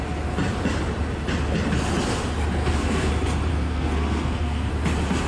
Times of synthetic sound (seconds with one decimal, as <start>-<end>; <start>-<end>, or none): 2.6-3.1; 3.5-4.7